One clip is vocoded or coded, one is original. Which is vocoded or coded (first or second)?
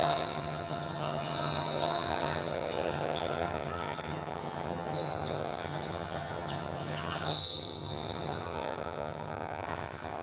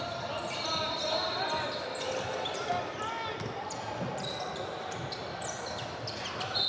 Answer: first